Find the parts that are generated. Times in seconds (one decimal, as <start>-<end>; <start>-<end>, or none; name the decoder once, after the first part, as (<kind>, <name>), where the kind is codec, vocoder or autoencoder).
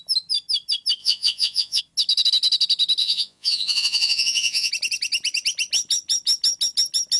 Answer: 1.0-1.8 (vocoder, Vocos); 3.0-4.7